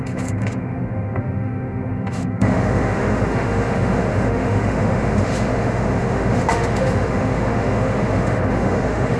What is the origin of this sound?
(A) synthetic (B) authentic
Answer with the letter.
A